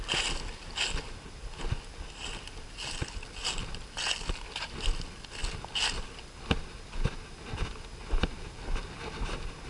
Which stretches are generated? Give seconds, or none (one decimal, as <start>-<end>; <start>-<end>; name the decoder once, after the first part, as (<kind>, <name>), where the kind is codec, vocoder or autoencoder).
none